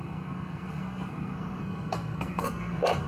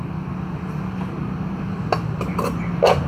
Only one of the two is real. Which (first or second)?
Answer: second